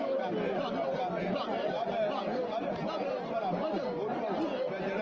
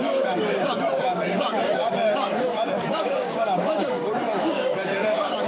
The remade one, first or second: second